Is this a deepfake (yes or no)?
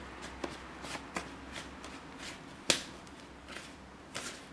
no